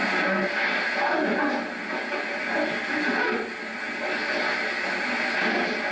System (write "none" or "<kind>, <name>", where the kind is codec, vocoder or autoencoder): none